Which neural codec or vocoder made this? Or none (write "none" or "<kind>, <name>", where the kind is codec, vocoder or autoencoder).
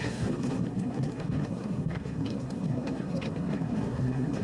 codec, SNAC